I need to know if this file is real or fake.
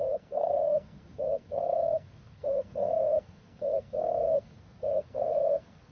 fake